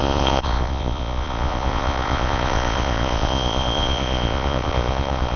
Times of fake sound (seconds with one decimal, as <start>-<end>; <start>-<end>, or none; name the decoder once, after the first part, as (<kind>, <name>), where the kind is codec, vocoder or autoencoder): 0.0-5.4 (vocoder, Vocos)